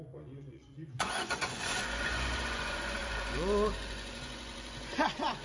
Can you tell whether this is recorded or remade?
remade